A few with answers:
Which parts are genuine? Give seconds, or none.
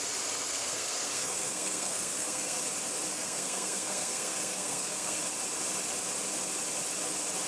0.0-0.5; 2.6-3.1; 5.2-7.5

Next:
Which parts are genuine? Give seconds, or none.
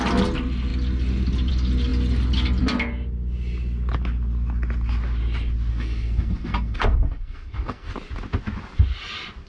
0.0-5.7; 7.9-9.5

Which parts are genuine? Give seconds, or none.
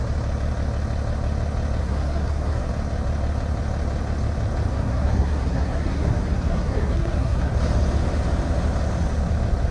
0.0-1.8; 2.7-4.7; 7.5-9.7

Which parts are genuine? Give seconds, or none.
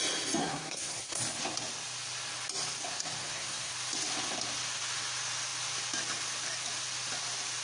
0.0-0.4; 1.2-3.2; 3.7-7.6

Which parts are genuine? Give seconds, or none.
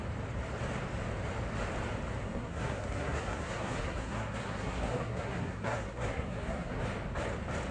0.0-2.2; 6.8-7.7